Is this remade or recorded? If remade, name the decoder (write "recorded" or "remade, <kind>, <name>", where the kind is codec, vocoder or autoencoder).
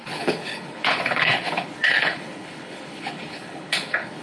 remade, codec, HILCodec